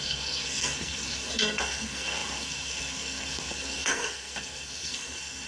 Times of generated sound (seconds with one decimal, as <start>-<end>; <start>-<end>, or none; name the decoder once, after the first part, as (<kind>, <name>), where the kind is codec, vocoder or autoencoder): 0.0-5.5 (codec, SNAC)